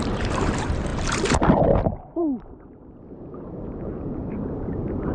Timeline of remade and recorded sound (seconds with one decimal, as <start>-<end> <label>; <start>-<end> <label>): 0.0-0.9 remade; 0.9-3.1 recorded; 3.1-5.1 remade